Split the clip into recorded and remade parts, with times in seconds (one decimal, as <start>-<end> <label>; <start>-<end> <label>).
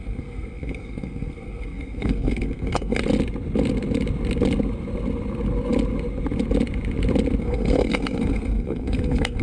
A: 0.0-3.0 remade; 3.0-7.4 recorded; 7.4-9.4 remade